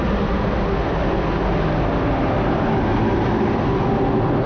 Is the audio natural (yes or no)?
yes